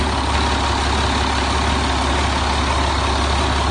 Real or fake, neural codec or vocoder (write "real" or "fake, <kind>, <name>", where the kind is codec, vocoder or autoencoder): real